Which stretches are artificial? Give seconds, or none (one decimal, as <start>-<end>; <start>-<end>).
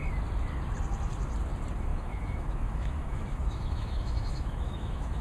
1.9-5.2